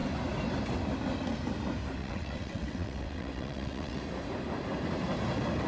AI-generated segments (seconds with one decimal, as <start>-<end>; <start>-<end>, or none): 2.0-4.0